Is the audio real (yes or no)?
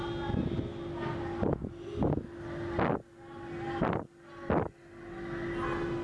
yes